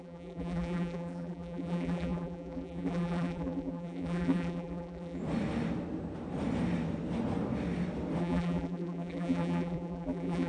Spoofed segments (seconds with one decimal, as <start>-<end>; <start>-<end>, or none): 0.0-5.2; 8.2-10.5